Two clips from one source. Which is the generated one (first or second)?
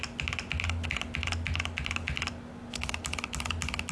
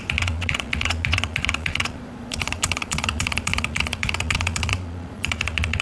second